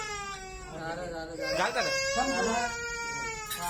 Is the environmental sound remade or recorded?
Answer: recorded